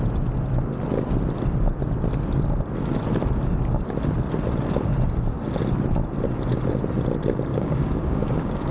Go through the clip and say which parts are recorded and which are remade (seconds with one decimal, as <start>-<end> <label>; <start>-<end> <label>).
0.0-7.5 recorded; 7.5-8.7 remade